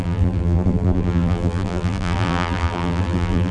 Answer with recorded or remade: remade